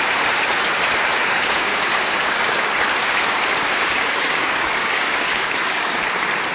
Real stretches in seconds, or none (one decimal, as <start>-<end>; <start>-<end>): 0.0-1.1; 2.6-3.0; 6.0-6.5